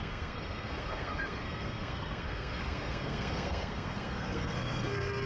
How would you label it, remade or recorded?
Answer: remade